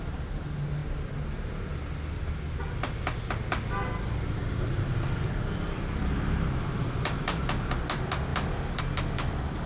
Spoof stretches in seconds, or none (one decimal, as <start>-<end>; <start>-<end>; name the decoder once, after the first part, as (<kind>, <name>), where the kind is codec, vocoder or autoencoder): 4.4-7.8 (vocoder, BigVGAN v2); 8.3-8.8